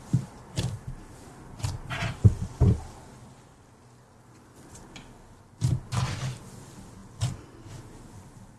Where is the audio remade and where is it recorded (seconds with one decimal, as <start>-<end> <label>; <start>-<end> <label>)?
0.0-8.6 recorded